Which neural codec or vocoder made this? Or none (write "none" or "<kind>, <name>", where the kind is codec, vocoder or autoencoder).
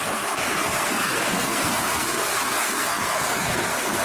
codec, SNAC